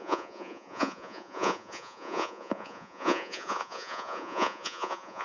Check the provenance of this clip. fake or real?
fake